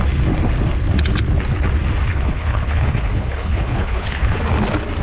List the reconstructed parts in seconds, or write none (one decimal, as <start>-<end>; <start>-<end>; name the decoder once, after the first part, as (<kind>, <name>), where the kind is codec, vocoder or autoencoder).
2.1-4.4 (codec, HILCodec)